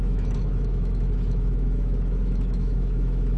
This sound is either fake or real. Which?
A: fake